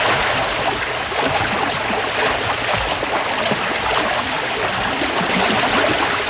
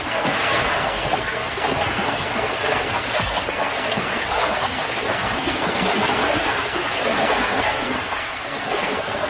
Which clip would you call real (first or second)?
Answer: first